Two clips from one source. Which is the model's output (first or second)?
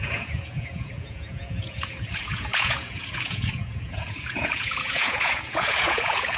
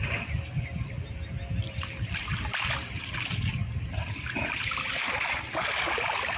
first